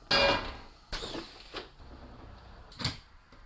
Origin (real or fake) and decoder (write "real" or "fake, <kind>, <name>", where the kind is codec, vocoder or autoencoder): real